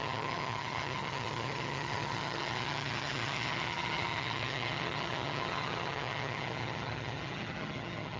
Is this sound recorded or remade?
remade